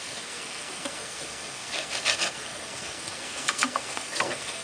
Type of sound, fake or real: fake